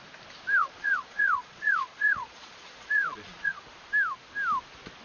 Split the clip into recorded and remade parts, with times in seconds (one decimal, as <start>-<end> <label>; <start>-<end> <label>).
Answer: 0.0-0.6 recorded; 0.6-3.6 remade; 3.6-5.0 recorded